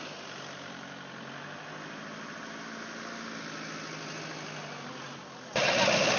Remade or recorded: recorded